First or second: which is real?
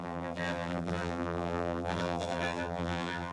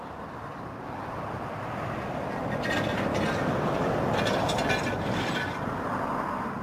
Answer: second